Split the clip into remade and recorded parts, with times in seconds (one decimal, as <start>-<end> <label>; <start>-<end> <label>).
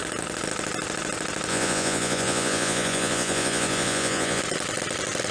0.0-1.5 recorded; 1.5-4.4 remade; 4.4-5.3 recorded